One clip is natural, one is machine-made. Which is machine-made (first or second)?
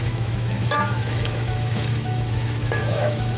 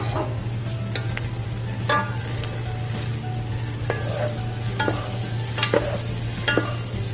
first